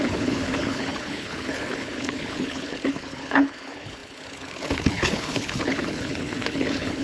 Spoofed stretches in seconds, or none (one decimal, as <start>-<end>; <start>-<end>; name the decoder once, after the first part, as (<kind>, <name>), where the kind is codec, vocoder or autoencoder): 0.0-7.0 (codec, HILCodec)